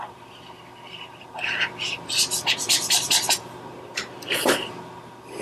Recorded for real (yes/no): yes